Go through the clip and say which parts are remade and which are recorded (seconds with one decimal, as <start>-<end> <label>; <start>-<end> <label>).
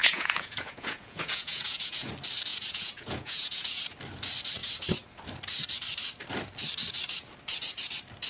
0.0-2.1 remade; 2.1-2.5 recorded; 2.5-3.8 remade; 3.8-8.3 recorded